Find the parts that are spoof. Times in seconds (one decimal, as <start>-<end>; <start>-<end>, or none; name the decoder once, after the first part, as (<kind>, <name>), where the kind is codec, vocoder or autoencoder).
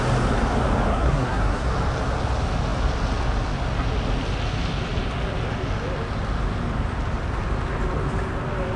0.9-1.7 (codec, SNAC)